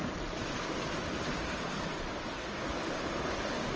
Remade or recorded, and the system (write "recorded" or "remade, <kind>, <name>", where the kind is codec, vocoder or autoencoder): recorded